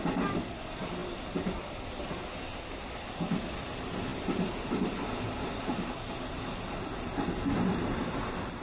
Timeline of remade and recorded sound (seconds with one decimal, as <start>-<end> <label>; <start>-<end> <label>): 0.0-8.6 recorded

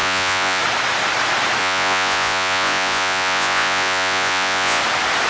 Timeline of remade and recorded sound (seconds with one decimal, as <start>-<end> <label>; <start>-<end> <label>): 0.0-0.6 remade; 0.6-1.6 recorded; 1.6-4.8 remade; 4.8-5.3 recorded